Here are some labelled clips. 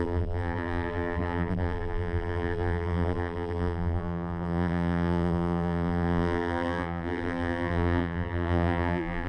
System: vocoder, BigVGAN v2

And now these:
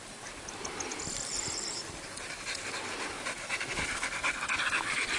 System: vocoder, BigVGAN v2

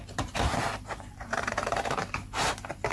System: vocoder, BigVGAN v2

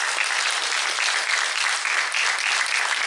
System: none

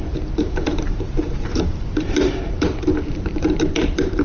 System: vocoder, BigVGAN v2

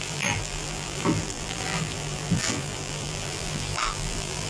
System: vocoder, BigVGAN v2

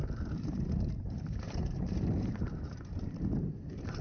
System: vocoder, BigVGAN v2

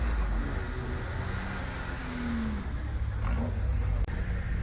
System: none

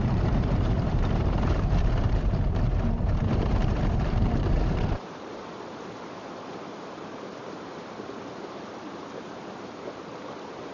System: vocoder, BigVGAN v2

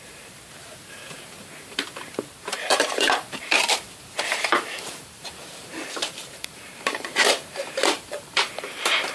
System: vocoder, BigVGAN v2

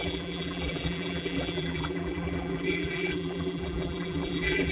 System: vocoder, BigVGAN v2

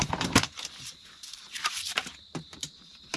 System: vocoder, BigVGAN v2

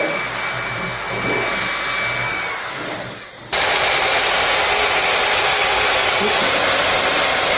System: none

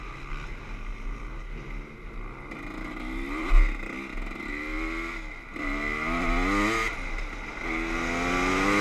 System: none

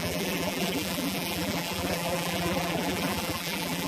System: vocoder, BigVGAN v2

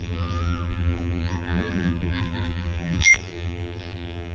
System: vocoder, BigVGAN v2